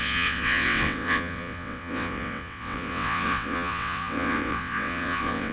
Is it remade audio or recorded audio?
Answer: remade